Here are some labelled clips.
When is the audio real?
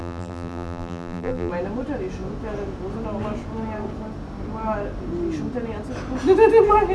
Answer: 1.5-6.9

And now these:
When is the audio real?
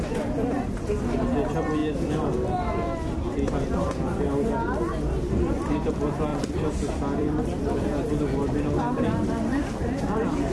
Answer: 0.0-6.3; 7.8-10.5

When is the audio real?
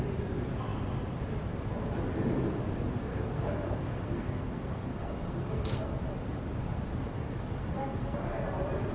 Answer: 0.0-3.1; 6.0-6.6; 8.4-8.9